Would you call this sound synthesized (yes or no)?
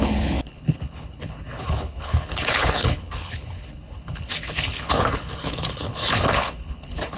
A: yes